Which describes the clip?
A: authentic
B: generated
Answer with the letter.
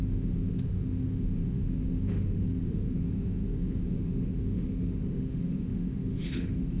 B